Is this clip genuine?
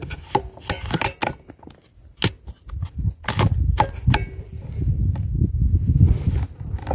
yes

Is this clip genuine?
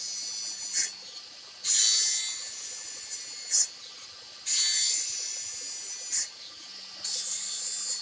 yes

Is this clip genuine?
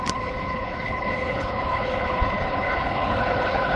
no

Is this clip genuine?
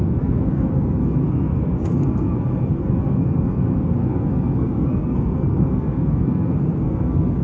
no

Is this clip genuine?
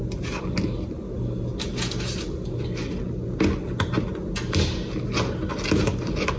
yes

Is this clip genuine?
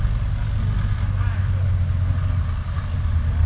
yes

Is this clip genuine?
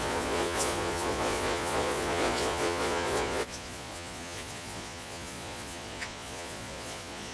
no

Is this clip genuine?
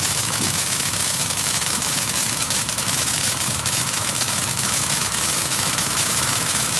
no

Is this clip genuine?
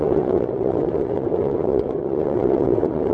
no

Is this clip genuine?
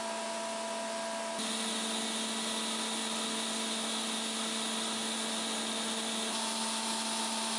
yes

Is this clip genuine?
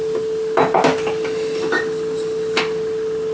yes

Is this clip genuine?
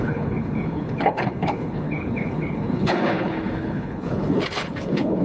no